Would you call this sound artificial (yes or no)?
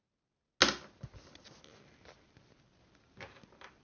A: no